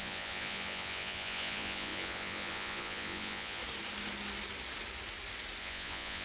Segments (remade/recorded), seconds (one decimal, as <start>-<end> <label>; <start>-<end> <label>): 0.0-3.6 remade; 3.6-5.6 recorded; 5.6-6.2 remade